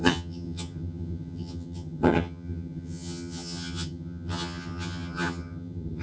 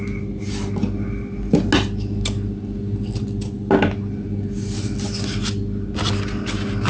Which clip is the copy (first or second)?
first